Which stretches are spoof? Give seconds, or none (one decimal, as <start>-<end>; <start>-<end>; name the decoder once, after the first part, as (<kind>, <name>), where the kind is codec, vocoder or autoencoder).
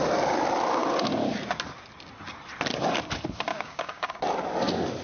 3.5-4.2 (codec, DAC)